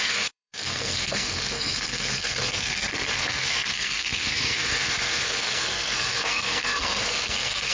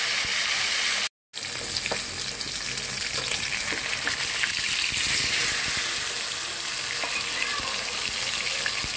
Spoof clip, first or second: first